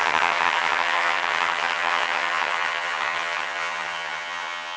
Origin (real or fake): fake